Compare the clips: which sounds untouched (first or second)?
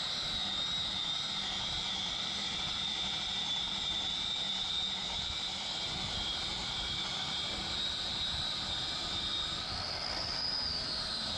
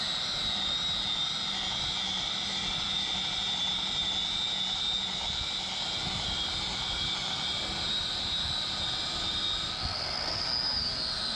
second